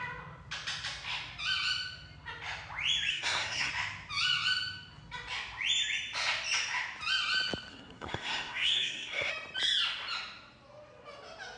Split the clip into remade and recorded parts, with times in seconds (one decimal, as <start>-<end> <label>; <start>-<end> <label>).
0.0-3.1 recorded; 3.1-3.7 remade; 3.7-7.7 recorded; 7.7-9.3 remade; 9.3-11.6 recorded

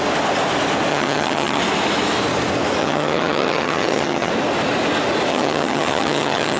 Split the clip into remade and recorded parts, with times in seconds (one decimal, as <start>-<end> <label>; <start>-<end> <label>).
0.0-0.9 recorded; 0.9-1.6 remade; 1.6-2.8 recorded; 2.8-4.3 remade; 4.3-5.3 recorded; 5.3-6.6 remade